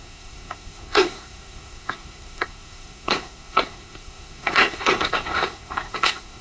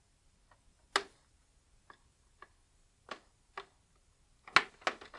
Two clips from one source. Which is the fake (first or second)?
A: first